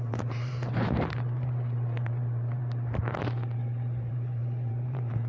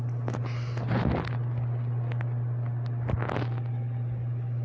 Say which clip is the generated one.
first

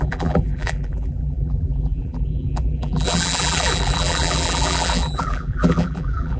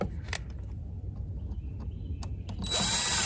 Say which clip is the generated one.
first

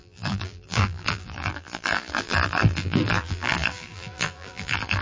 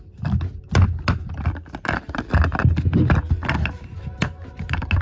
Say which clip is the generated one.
first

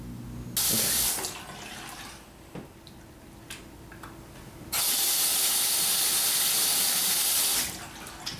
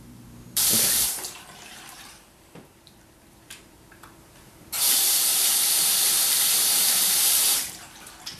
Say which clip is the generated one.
second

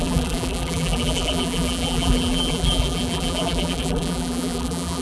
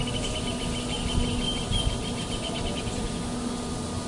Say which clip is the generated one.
first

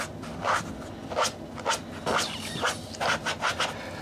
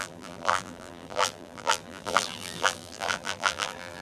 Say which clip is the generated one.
second